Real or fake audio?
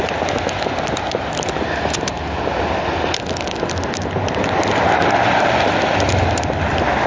real